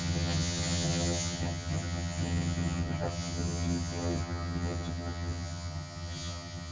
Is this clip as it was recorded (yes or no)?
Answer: no